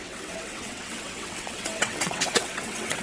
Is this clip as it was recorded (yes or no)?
no